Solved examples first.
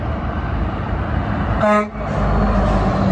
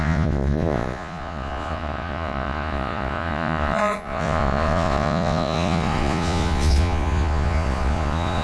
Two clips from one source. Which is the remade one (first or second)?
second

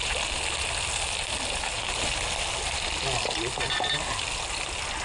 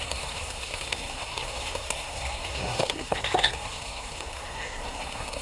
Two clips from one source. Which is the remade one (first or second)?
second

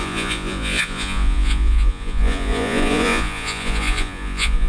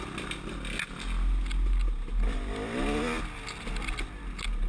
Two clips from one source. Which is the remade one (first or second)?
first